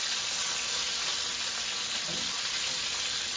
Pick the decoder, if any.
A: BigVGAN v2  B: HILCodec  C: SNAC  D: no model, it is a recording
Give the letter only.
D